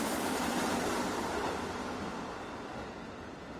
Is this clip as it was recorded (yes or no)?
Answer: no